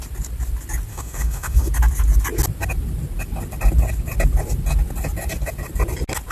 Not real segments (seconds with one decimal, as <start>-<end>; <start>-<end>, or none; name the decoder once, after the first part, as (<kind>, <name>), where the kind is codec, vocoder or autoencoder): 0.9-1.7 (autoencoder, DAC-VAE)